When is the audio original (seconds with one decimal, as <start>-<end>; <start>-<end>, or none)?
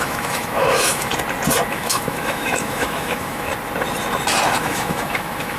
1.1-1.7; 3.5-4.6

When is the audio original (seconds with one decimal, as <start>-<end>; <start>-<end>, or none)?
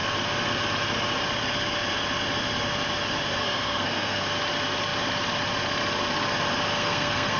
0.0-3.4; 4.2-6.7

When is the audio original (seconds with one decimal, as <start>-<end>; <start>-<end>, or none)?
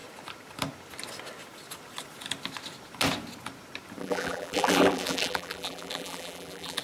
0.0-4.0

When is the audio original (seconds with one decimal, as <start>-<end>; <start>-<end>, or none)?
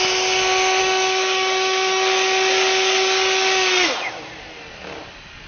0.0-0.8; 4.1-5.5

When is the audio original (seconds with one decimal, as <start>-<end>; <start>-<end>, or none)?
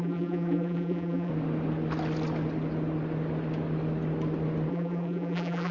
1.3-4.7